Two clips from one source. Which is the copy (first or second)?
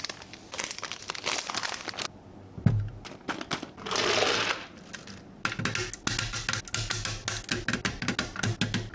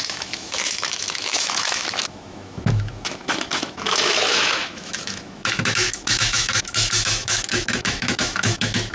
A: second